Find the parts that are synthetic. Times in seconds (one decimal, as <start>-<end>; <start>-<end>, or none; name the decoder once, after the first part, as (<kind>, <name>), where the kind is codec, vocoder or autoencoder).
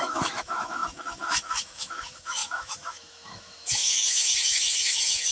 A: 0.0-5.3 (autoencoder, DAC-VAE)